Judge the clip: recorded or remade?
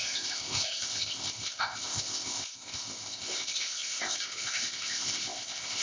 remade